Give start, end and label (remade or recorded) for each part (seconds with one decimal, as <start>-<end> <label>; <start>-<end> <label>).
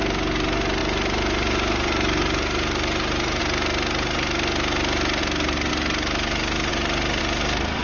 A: 0.0-7.8 recorded